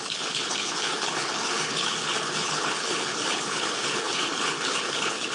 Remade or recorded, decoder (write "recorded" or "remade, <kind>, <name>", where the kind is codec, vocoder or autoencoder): remade, codec, HILCodec